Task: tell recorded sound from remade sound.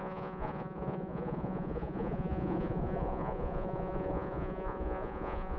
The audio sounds remade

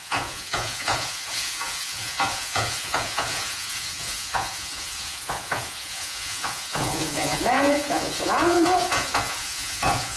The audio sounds remade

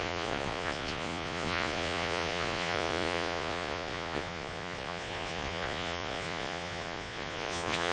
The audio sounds remade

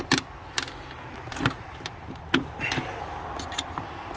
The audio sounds recorded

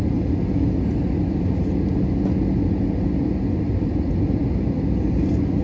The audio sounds recorded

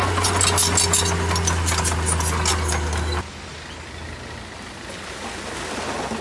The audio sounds recorded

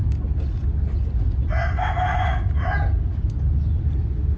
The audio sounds recorded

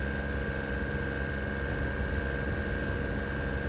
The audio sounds recorded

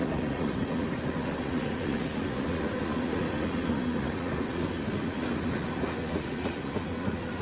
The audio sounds remade